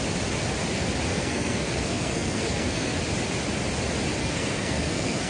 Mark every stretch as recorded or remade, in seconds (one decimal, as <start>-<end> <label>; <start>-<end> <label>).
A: 0.0-1.1 recorded; 1.1-3.0 remade; 3.0-4.2 recorded; 4.2-5.3 remade